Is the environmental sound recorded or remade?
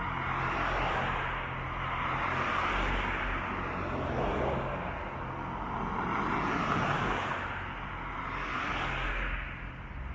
recorded